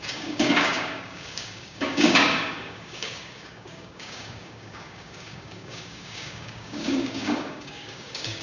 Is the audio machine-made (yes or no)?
yes